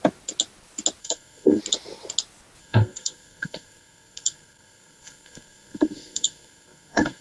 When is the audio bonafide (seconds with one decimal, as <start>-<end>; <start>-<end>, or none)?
0.0-1.0; 1.6-2.6